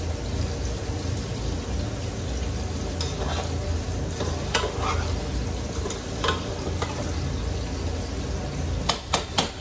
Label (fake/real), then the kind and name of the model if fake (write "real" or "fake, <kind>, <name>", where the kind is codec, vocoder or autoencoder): real